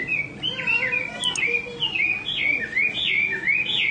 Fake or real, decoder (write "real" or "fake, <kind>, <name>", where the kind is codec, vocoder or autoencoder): real